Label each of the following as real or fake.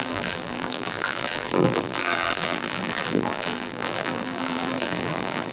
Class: fake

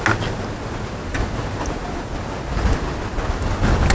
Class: real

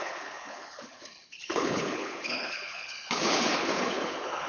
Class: fake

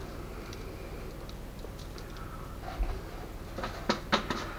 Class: real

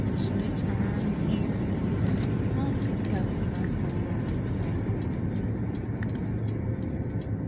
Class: real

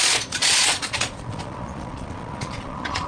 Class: fake